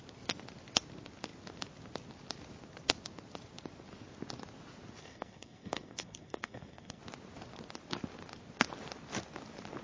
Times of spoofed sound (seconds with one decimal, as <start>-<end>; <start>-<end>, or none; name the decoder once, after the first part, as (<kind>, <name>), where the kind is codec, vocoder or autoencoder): 5.0-7.0 (codec, SNAC)